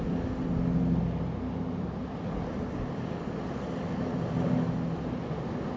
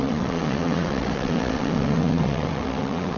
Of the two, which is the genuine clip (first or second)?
first